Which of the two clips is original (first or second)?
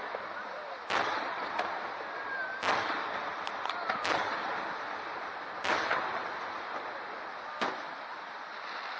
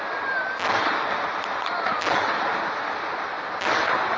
second